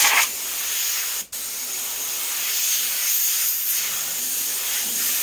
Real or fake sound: real